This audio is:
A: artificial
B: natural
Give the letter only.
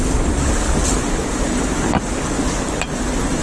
B